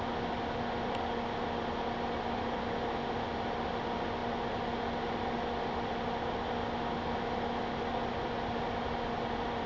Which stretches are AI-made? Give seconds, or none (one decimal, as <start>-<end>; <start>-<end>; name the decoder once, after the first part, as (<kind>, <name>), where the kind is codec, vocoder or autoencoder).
none